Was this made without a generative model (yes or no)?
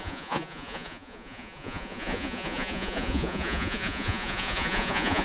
no